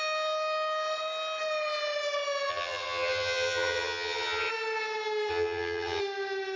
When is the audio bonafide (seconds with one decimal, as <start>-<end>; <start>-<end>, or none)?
0.0-2.5; 4.5-5.3; 6.0-6.6